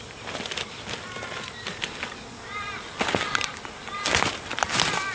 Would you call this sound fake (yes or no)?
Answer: no